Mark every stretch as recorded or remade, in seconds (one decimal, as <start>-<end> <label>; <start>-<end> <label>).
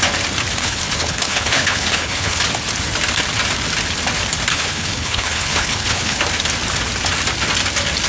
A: 0.0-0.6 recorded; 0.6-2.4 remade; 2.4-4.5 recorded; 4.5-6.2 remade; 6.2-8.1 recorded